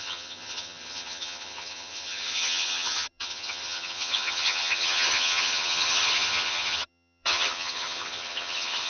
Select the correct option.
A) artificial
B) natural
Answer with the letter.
A